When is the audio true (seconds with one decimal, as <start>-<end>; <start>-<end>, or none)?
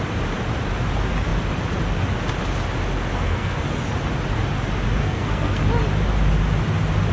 0.0-3.1; 3.6-5.0; 5.6-7.1